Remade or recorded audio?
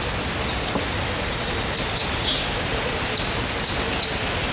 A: recorded